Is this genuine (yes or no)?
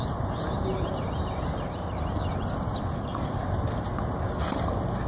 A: yes